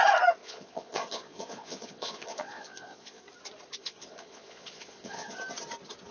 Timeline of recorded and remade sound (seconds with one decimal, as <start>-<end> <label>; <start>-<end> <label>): 0.0-0.4 recorded; 0.4-3.2 remade; 3.2-3.8 recorded; 3.8-5.4 remade; 5.4-6.1 recorded